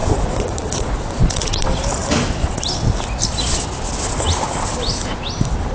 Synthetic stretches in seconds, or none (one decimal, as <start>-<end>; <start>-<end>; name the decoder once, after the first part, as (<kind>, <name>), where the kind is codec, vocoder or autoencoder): 0.0-1.6 (vocoder, Vocos)